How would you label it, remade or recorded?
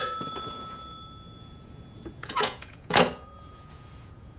remade